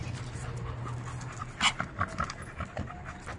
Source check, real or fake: real